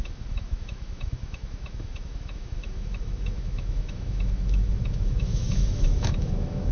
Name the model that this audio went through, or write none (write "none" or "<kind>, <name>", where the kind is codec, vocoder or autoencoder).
autoencoder, DAC-VAE